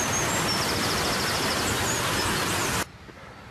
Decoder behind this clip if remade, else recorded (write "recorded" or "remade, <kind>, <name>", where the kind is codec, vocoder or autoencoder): recorded